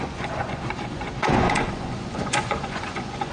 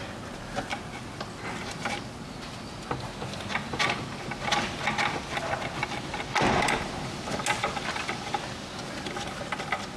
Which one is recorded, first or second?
second